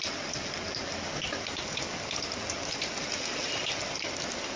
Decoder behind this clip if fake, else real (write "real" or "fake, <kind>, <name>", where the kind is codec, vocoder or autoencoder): real